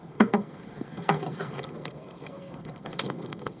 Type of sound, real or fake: fake